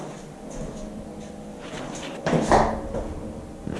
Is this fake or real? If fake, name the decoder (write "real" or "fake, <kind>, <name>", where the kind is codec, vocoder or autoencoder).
real